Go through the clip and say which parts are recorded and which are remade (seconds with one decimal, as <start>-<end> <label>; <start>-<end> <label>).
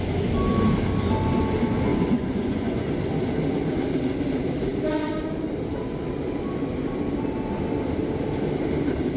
0.0-1.9 recorded; 1.9-2.9 remade; 2.9-9.2 recorded